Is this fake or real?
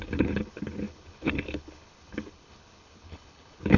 fake